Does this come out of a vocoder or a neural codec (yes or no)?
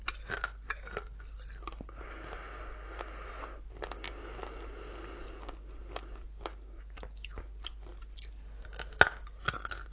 no